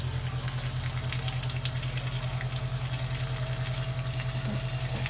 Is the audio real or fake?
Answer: real